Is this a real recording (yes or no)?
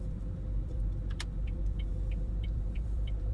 no